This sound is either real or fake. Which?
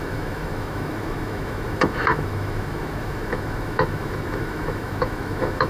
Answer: fake